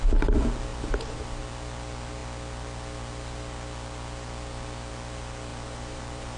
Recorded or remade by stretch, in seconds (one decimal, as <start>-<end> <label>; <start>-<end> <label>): 0.0-0.7 recorded; 0.7-1.4 remade; 1.4-5.5 recorded; 5.5-6.4 remade